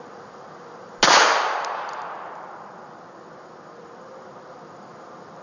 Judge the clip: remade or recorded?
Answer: recorded